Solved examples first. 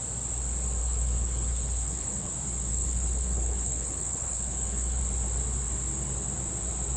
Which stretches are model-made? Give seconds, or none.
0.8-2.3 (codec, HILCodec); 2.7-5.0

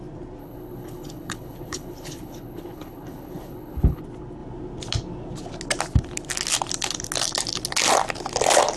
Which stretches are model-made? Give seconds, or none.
0.4-4.0 (codec, HILCodec)

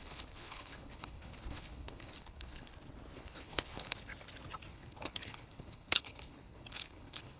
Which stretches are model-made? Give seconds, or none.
0.0-2.7 (codec, HILCodec); 3.2-4.1; 4.7-7.4